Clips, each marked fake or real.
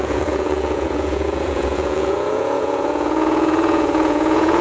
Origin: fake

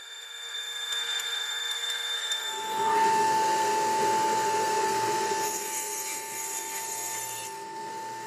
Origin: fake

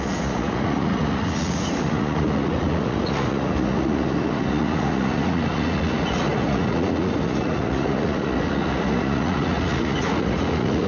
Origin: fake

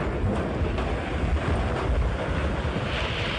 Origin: real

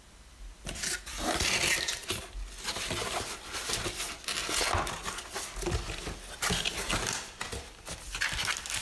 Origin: real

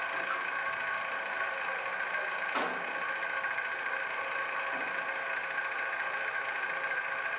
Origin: real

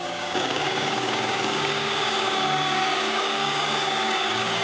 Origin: fake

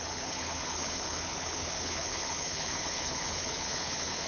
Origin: fake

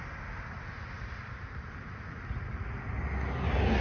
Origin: real